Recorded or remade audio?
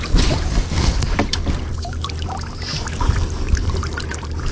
remade